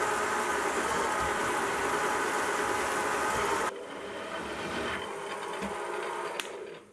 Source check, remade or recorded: recorded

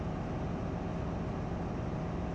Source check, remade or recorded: recorded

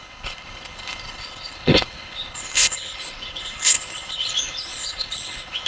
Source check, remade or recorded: remade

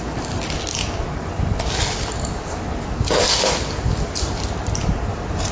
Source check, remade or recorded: recorded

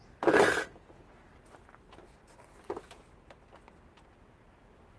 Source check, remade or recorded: recorded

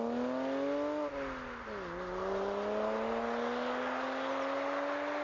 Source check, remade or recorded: recorded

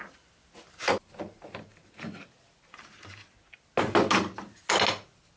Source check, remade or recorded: recorded